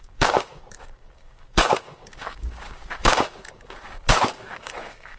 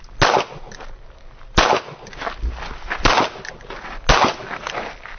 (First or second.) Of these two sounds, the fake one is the first